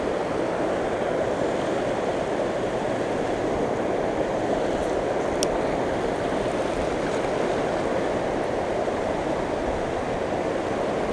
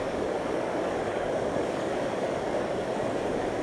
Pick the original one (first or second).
first